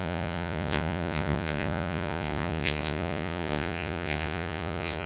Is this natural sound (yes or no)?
no